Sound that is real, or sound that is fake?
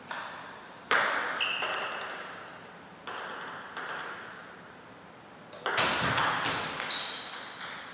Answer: real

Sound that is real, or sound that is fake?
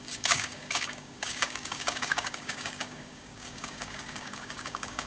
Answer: fake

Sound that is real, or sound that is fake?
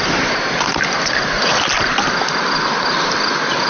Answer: real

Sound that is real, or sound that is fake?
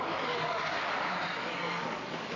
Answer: fake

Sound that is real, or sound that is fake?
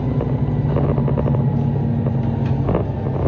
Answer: real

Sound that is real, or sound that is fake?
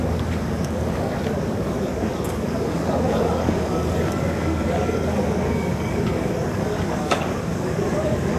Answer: fake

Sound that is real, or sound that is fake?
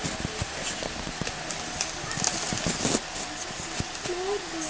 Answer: real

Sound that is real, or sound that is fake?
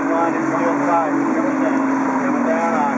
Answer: real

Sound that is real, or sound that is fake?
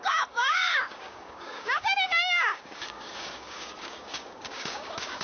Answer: fake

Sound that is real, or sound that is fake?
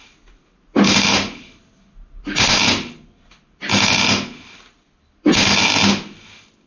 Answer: real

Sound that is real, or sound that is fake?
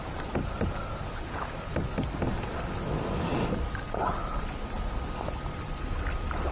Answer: real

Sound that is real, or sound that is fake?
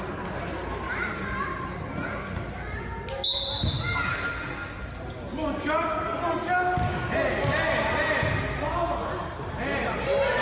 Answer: real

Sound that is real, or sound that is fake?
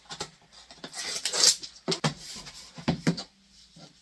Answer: real